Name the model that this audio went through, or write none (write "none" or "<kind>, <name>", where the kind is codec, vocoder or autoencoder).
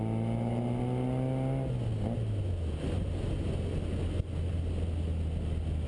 none